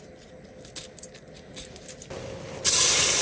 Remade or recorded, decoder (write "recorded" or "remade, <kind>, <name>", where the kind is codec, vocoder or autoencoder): recorded